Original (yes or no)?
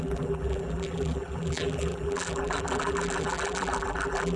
no